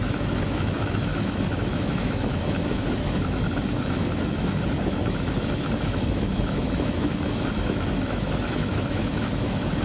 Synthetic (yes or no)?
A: yes